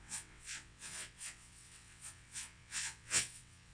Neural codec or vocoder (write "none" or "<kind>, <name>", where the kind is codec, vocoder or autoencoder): vocoder, WaveNeXt